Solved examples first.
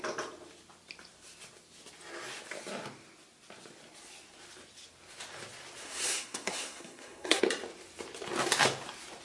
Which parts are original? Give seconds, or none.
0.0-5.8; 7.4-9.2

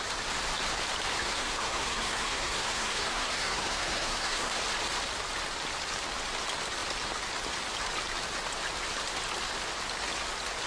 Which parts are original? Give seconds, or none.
0.0-1.2; 4.6-10.7

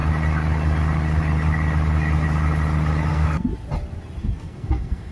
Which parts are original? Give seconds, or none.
0.0-3.1; 3.5-4.2

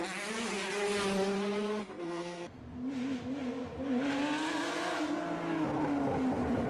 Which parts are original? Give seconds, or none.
0.0-1.8; 2.6-6.7

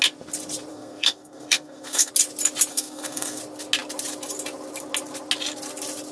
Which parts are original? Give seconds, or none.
0.0-0.7; 2.1-2.7; 3.4-6.1

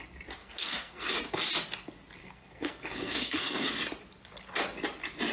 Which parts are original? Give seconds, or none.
0.0-0.4; 1.1-2.2; 3.7-5.3